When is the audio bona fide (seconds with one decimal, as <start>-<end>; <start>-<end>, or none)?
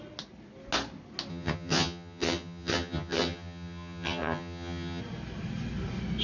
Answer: 0.0-1.3; 5.0-6.2